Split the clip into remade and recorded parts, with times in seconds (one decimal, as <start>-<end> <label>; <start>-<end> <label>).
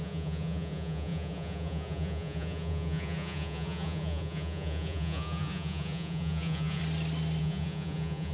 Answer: 0.0-6.8 remade; 6.8-7.4 recorded; 7.4-8.3 remade